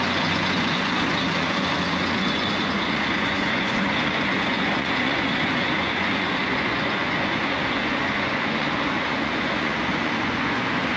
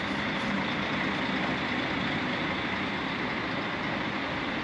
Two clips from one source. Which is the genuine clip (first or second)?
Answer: second